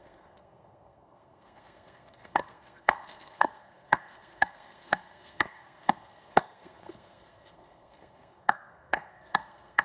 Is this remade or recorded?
remade